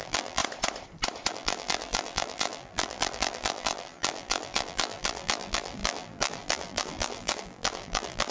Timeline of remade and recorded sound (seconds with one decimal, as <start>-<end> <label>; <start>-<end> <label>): 0.0-0.4 remade; 0.4-1.3 recorded; 1.3-8.3 remade